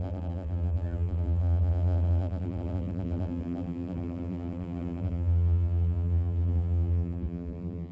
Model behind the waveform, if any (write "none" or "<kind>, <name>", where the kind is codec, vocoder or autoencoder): vocoder, BigVGAN v2